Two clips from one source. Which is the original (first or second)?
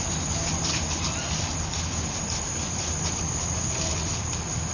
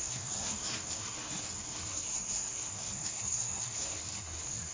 first